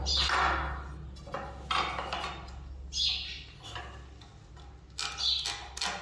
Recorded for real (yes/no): yes